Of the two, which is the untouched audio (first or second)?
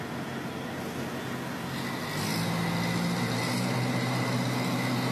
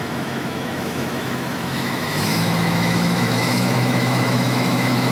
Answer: first